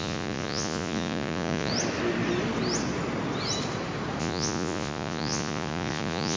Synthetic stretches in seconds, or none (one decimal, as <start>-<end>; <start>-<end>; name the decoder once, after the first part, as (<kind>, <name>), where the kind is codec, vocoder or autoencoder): 0.0-1.7 (vocoder, Vocos); 4.2-6.4

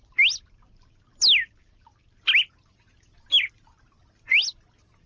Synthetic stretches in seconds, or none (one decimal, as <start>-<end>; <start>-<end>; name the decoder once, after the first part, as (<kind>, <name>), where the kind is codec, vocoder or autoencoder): none